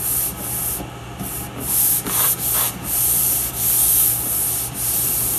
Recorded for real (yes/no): yes